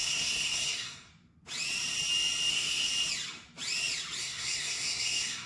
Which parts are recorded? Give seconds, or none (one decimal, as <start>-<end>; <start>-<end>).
1.1-2.5; 2.9-4.2